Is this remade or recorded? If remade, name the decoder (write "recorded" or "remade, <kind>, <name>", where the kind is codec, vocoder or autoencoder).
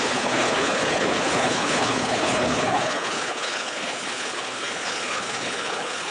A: remade, codec, HILCodec